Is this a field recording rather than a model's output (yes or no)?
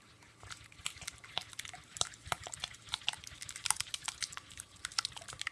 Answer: yes